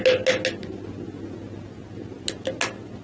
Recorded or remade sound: recorded